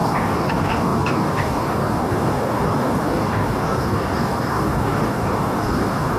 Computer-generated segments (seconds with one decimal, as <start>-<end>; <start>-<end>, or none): 0.0-6.2